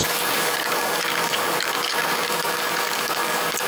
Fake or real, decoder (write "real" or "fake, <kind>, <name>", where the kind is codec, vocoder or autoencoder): fake, codec, DAC